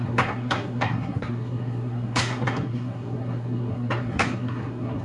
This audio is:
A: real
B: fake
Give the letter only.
B